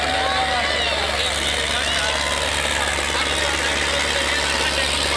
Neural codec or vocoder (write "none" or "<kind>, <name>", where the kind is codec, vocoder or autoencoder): none